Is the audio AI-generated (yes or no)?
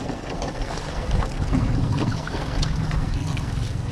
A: yes